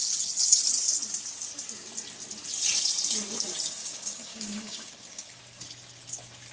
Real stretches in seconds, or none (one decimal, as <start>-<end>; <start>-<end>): 0.0-3.8; 5.4-6.5